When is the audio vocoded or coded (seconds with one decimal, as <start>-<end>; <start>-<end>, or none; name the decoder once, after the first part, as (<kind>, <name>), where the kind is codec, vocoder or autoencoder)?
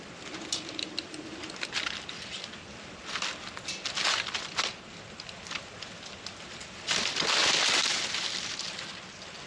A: none